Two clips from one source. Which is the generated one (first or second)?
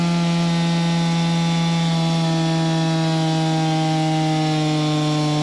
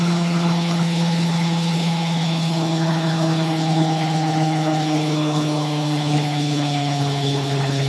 second